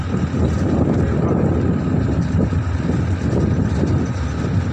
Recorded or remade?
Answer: recorded